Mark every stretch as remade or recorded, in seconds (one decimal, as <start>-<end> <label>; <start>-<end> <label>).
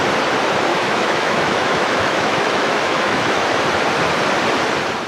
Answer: 0.0-0.7 recorded; 0.7-3.6 remade; 3.6-5.1 recorded